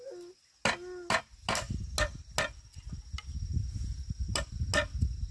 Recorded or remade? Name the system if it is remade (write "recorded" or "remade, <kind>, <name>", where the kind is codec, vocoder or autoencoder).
recorded